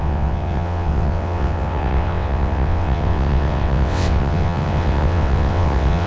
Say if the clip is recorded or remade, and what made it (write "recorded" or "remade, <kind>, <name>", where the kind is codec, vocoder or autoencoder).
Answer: remade, vocoder, WaveNeXt